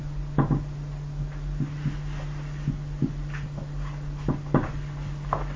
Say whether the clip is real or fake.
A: real